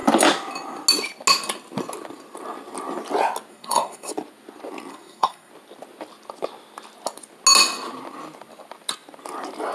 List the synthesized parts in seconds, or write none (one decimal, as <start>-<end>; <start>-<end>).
3.5-4.1; 4.9-5.5